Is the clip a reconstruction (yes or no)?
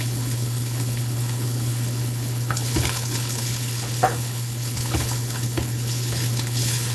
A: yes